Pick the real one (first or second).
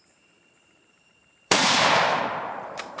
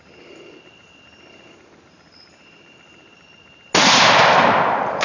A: second